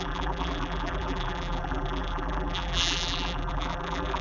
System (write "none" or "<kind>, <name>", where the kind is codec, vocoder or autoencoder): vocoder, BigVGAN v2